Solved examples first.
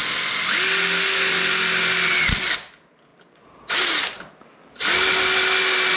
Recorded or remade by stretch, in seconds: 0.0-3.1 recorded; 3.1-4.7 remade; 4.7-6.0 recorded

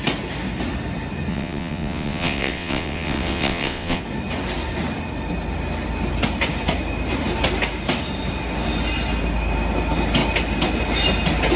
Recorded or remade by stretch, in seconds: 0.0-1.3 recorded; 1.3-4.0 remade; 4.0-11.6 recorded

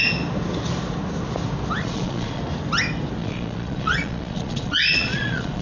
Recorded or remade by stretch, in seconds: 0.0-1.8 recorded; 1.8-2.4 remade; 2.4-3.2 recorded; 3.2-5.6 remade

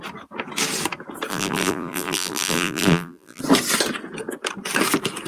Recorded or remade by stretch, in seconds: 0.0-1.3 recorded; 1.3-3.4 remade; 3.4-5.3 recorded

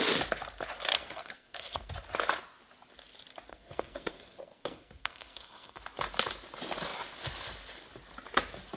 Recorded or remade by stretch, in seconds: 0.0-0.9 recorded; 0.9-1.9 remade; 1.9-3.5 recorded; 3.5-5.8 remade; 5.8-8.8 recorded

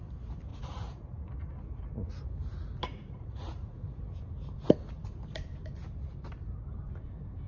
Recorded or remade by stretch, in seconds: 0.0-0.5 recorded; 0.5-1.3 remade; 1.3-2.9 recorded; 2.9-4.0 remade; 4.0-7.5 recorded